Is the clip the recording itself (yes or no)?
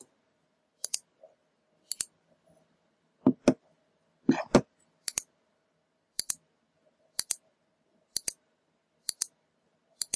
yes